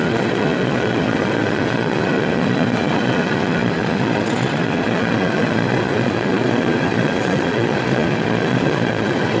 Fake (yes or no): yes